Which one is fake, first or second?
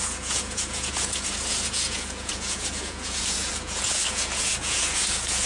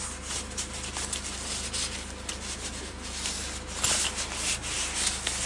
first